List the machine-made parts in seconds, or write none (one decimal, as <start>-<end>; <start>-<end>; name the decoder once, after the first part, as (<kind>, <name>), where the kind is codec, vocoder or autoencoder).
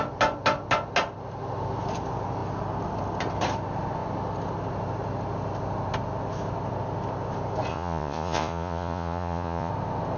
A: 7.7-9.7 (vocoder, Vocos)